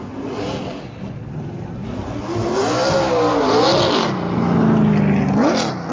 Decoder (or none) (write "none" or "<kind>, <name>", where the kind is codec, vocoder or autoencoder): none